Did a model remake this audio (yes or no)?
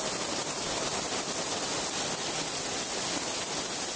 no